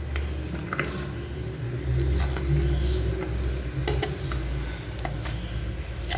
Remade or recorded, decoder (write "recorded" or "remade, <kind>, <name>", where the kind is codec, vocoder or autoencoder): recorded